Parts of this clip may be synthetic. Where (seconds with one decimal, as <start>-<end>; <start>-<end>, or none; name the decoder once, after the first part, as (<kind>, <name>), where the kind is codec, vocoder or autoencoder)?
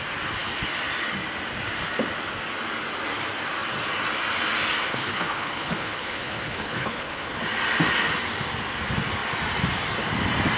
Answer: 4.9-7.4 (codec, HILCodec)